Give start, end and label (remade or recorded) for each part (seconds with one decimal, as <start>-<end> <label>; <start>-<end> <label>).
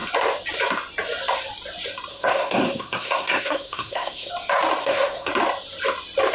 0.0-2.1 recorded; 2.1-4.3 remade; 4.3-4.8 recorded; 4.8-5.3 remade; 5.3-6.3 recorded